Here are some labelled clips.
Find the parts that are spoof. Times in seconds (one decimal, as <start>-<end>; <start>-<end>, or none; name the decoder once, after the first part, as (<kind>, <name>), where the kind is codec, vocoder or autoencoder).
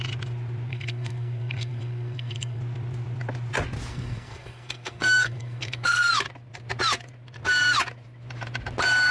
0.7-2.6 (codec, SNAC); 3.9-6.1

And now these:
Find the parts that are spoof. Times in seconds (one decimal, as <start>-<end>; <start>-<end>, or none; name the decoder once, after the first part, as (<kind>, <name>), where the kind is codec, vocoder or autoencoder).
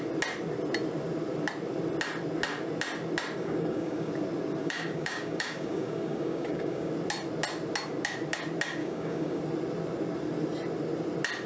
3.4-4.1 (codec, DAC); 4.6-6.9; 8.8-9.4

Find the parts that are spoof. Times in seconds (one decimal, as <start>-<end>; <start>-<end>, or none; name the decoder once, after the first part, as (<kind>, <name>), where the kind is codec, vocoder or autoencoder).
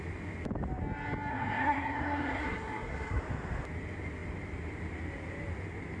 1.3-3.2 (codec, SNAC)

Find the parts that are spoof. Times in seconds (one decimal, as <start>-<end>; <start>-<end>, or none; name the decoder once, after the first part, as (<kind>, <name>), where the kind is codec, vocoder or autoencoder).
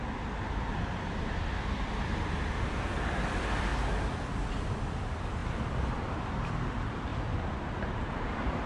0.0-7.1 (vocoder, BigVGAN v2); 8.1-8.7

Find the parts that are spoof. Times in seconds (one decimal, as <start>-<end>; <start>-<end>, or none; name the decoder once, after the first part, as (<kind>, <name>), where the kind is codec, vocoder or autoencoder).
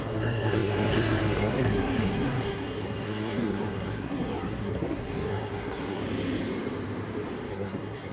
0.0-6.0 (codec, SNAC); 7.5-8.1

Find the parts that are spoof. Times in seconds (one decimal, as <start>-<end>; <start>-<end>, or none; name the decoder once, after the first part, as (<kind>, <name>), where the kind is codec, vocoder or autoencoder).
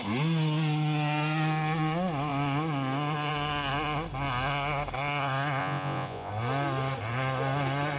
5.6-6.3 (vocoder, Vocos)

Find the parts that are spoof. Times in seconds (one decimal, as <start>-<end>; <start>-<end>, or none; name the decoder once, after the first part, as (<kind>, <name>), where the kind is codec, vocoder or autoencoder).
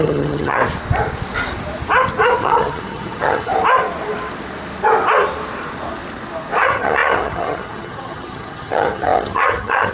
0.0-0.6 (vocoder, HiFi-GAN); 2.4-3.5; 6.6-9.9